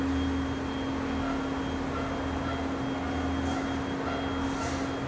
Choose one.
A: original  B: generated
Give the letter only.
A